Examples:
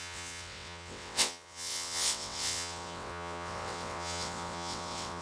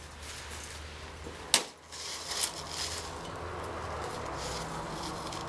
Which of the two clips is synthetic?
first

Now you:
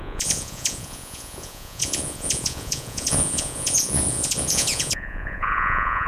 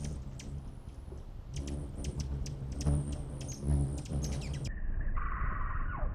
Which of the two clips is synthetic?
first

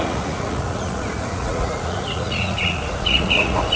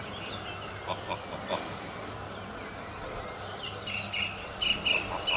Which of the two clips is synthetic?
first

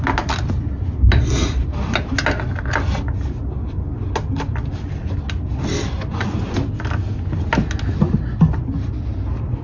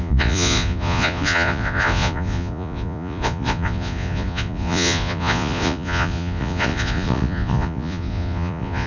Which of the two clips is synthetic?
second